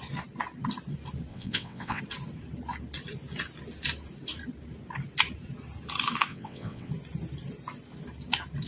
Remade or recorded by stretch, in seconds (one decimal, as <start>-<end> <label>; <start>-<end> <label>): 0.0-1.3 recorded; 1.3-2.0 remade; 2.0-6.3 recorded; 6.3-6.9 remade; 6.9-8.7 recorded